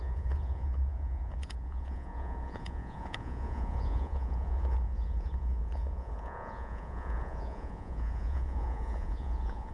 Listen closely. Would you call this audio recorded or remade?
remade